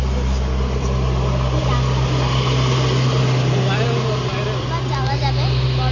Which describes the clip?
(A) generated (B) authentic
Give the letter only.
B